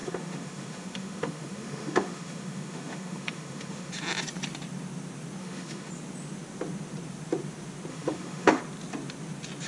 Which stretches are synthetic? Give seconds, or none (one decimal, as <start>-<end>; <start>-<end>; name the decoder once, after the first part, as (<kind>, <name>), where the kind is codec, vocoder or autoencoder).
0.0-3.9 (autoencoder, DAC-VAE); 5.4-5.9; 7.9-8.6